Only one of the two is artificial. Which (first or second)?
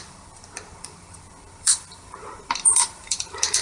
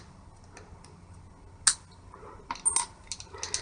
first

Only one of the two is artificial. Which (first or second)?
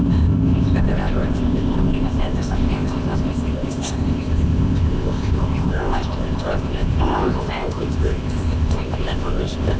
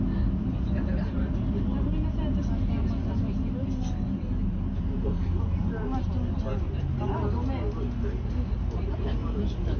first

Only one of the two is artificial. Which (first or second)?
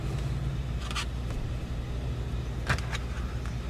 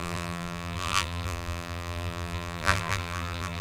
second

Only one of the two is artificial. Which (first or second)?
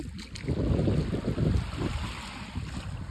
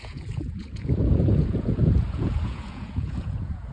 second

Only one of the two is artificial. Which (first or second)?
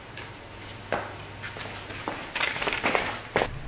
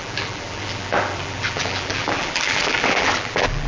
second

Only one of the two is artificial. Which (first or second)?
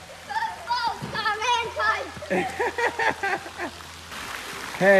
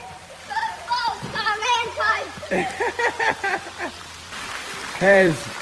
second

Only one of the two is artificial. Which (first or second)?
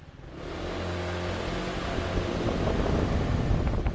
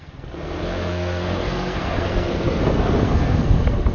second